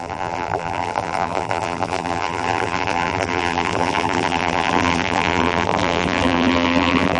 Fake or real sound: fake